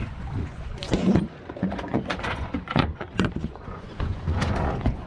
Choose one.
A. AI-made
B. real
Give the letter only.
A